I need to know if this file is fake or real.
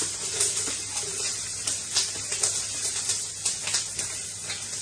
real